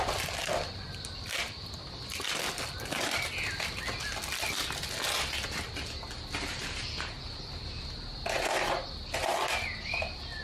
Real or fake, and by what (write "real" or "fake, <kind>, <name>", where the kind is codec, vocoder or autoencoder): real